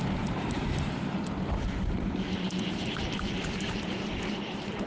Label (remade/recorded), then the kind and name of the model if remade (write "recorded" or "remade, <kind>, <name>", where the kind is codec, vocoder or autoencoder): remade, vocoder, BigVGAN v2